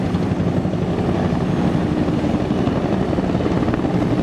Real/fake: real